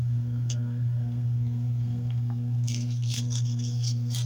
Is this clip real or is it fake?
fake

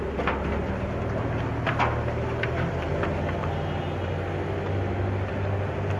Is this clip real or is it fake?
real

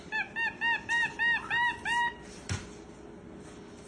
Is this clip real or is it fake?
real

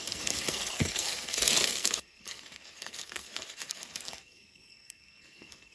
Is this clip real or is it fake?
fake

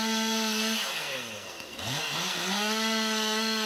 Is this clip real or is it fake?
fake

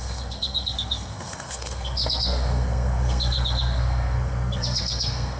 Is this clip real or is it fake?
fake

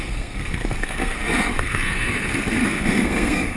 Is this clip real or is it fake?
fake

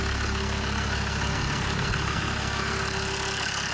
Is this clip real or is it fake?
fake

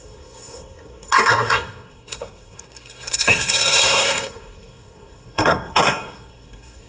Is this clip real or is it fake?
fake